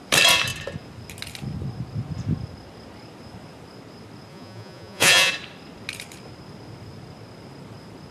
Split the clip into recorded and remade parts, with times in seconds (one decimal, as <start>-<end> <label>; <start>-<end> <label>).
0.0-4.3 recorded; 4.3-5.3 remade; 5.3-8.1 recorded